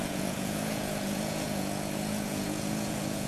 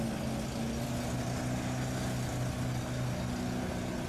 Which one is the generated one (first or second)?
first